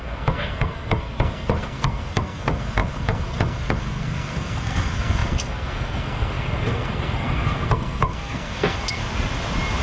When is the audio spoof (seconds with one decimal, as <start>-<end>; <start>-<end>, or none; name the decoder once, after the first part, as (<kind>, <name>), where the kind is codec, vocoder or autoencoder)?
0.0-9.0 (codec, SNAC)